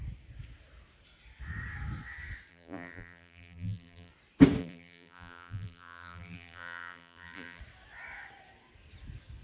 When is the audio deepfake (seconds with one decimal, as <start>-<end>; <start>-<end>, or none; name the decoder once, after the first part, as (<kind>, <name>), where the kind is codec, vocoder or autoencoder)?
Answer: 2.5-4.1 (vocoder, BigVGAN v2); 4.6-7.6